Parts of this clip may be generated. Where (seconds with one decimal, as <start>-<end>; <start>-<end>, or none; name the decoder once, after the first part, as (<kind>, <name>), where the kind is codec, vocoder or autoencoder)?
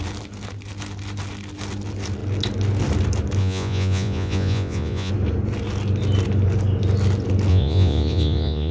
3.4-5.1 (vocoder, Vocos); 7.5-8.7